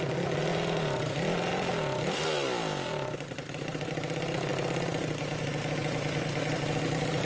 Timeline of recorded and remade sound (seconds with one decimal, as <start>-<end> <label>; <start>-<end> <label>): 0.0-7.2 recorded